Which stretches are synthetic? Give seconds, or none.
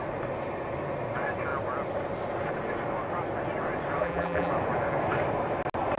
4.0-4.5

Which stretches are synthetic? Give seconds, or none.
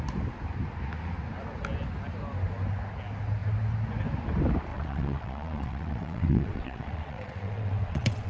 4.7-8.3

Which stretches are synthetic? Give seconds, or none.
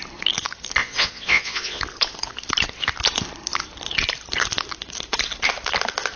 0.8-1.8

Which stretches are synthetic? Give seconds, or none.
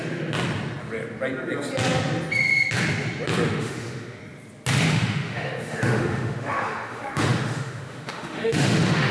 3.6-4.2; 4.9-9.1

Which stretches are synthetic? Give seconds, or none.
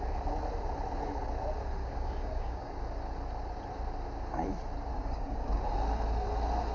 1.8-2.8; 4.9-5.6